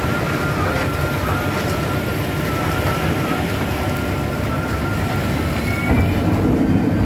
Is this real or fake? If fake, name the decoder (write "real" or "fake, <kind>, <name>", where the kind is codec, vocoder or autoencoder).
real